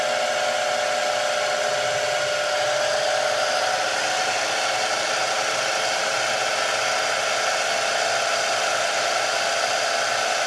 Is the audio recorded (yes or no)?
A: yes